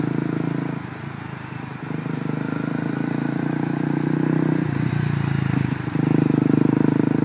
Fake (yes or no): no